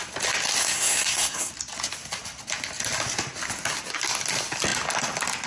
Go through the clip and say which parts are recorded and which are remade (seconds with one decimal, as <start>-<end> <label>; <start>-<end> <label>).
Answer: 0.0-0.6 recorded; 0.6-1.5 remade; 1.5-5.5 recorded